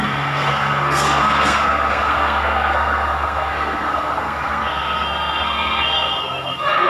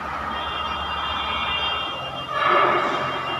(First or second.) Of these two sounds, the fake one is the first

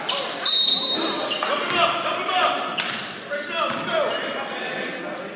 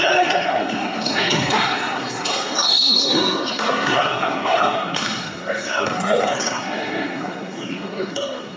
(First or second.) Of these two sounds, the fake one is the second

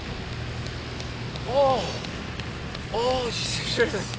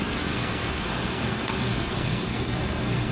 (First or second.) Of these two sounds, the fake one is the second